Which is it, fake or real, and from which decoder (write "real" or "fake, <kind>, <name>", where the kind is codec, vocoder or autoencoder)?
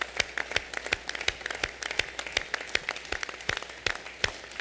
real